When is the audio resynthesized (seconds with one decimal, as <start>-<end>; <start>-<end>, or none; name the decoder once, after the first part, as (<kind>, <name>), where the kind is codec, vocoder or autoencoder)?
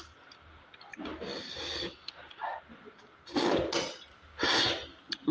none